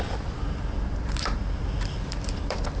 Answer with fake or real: fake